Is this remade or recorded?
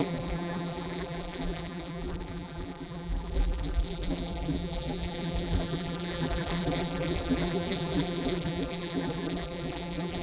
remade